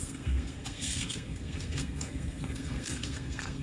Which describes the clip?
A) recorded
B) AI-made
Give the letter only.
B